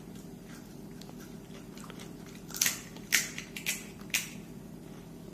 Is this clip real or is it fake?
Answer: real